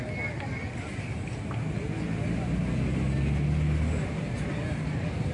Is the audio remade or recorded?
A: recorded